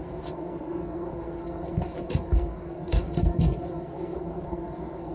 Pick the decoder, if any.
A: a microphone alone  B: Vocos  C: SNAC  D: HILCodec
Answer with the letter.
C